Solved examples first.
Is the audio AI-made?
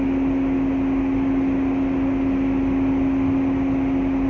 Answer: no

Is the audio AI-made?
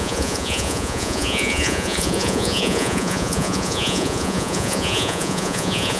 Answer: yes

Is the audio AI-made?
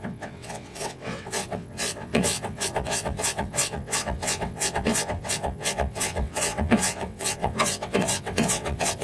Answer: yes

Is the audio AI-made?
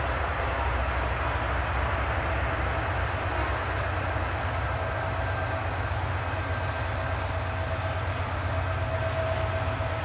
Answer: no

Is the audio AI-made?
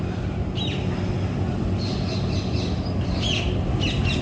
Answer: no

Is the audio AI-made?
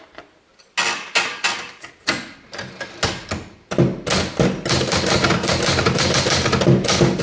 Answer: no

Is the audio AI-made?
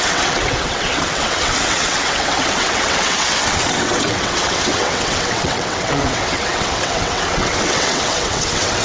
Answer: yes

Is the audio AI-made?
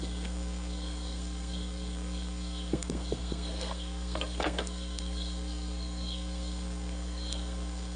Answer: yes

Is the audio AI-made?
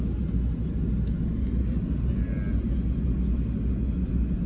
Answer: no